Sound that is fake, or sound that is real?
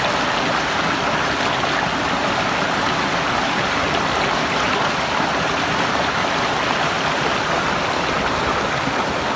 real